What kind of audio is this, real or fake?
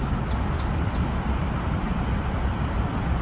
real